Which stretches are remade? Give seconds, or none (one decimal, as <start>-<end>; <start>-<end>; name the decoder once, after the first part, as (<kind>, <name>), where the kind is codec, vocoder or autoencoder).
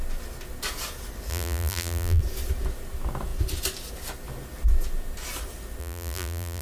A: 1.3-2.2 (vocoder, BigVGAN v2); 5.8-6.6